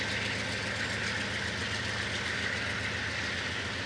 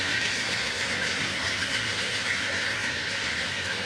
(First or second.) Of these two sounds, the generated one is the second